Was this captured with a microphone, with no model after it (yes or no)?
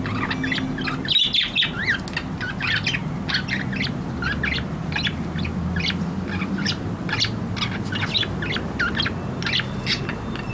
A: yes